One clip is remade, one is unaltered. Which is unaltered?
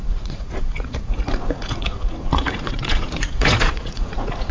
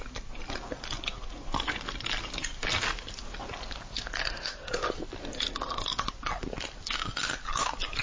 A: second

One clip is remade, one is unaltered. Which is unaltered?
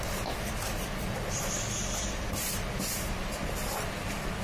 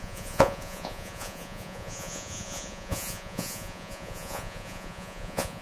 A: first